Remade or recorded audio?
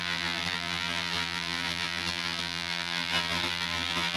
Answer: remade